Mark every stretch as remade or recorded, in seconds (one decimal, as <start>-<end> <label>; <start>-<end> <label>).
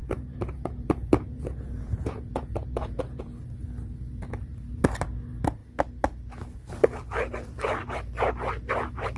0.0-3.4 remade; 3.4-9.2 recorded